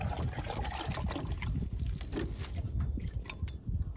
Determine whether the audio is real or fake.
real